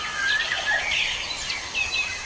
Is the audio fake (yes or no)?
no